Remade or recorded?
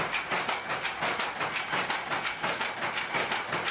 recorded